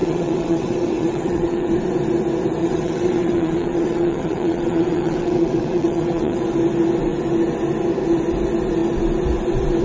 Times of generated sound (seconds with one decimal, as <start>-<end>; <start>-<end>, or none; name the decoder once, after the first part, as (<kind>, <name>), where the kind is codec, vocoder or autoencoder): 0.0-1.7 (vocoder, WaveNeXt); 2.6-6.4